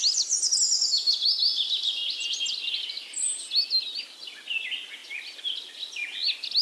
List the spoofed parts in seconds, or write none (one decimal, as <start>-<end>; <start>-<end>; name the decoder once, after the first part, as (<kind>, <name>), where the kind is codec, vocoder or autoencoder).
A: none